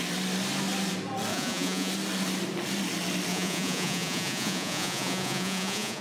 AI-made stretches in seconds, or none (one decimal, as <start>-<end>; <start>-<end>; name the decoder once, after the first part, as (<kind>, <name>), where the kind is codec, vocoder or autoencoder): 1.3-1.9 (vocoder, Vocos); 3.3-6.0